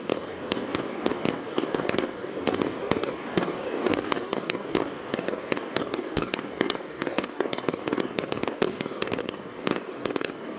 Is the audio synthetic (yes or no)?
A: yes